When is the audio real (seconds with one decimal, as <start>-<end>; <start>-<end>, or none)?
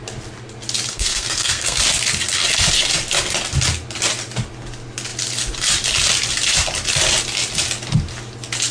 0.0-0.9; 1.8-8.7